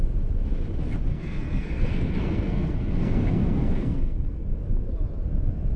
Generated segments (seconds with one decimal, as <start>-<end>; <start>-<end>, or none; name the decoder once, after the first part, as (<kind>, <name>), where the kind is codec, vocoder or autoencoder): 1.1-4.6 (codec, SNAC)